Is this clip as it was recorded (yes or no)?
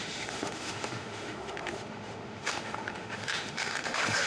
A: no